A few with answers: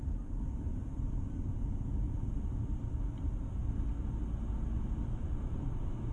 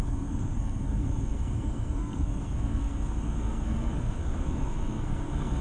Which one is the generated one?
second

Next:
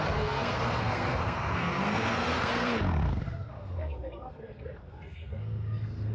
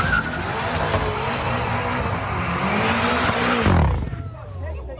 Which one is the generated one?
first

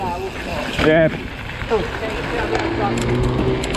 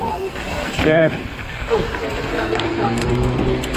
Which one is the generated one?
second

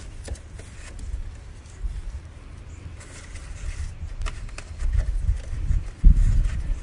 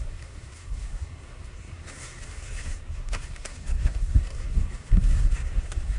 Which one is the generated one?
second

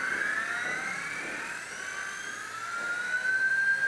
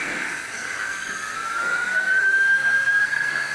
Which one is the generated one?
second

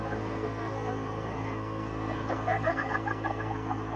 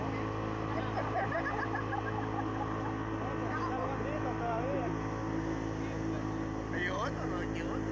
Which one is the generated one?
first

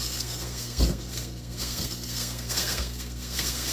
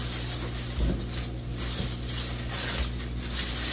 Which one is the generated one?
first